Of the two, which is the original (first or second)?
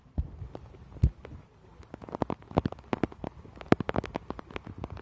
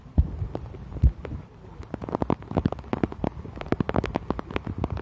first